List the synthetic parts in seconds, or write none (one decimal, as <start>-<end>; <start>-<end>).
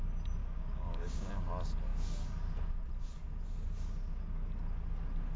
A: 0.4-1.3